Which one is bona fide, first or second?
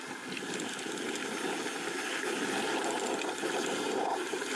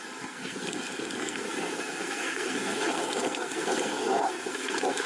first